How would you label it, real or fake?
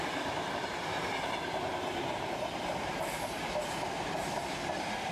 fake